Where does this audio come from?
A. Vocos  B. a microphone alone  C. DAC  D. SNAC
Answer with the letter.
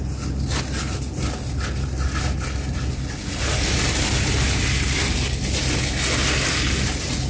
B